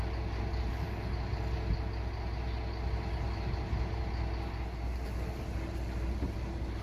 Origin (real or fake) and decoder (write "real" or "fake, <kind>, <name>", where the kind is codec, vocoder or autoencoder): real